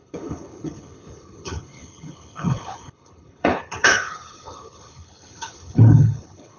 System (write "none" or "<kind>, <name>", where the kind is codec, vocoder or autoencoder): codec, HILCodec